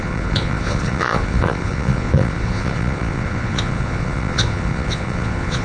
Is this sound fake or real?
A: fake